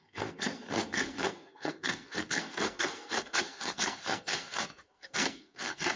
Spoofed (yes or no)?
yes